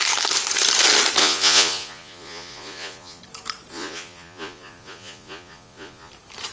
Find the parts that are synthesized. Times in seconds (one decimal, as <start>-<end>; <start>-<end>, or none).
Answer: 1.2-3.2; 3.7-6.1